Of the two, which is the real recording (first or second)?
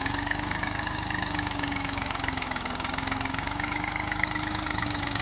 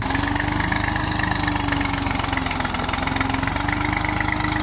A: second